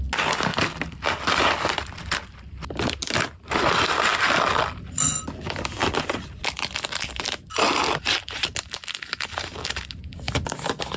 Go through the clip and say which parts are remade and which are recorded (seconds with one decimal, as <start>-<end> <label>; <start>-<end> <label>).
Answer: 0.0-11.0 recorded